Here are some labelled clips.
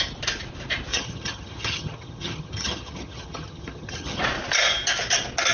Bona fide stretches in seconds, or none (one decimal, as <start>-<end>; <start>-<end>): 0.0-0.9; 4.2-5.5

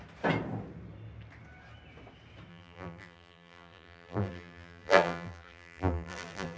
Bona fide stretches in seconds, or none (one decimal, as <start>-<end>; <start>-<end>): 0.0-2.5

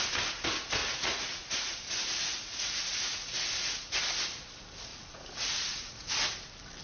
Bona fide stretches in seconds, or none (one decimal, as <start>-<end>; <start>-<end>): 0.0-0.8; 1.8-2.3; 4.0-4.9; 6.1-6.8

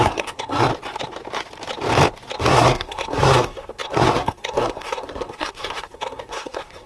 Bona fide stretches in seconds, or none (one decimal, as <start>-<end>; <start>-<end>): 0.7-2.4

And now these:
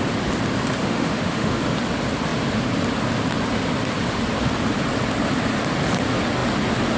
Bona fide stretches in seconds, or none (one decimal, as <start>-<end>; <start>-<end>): 0.0-0.8; 1.6-7.0

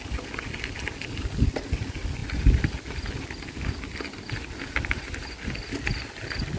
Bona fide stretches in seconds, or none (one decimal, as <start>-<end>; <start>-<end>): 0.0-6.6